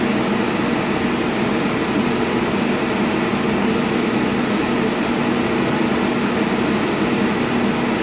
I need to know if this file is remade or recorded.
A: recorded